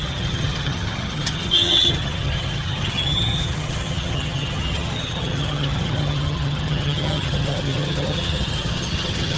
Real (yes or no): no